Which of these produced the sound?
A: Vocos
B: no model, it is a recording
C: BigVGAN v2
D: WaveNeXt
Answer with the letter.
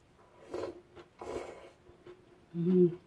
B